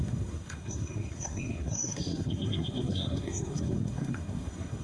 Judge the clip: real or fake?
fake